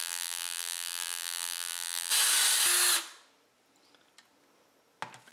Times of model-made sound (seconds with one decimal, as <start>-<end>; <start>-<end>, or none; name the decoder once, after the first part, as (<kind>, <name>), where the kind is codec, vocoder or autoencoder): 0.0-2.1 (vocoder, BigVGAN v2)